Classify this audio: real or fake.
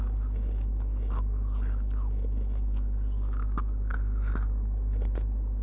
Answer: real